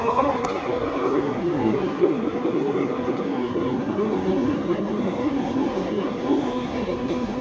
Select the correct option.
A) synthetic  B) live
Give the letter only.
A